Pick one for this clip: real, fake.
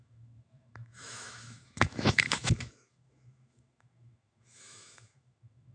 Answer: fake